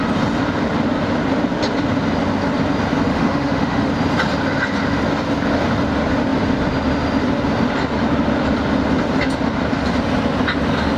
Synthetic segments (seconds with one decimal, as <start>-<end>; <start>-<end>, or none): 3.1-3.9